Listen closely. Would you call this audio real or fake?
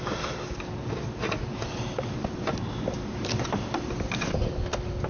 real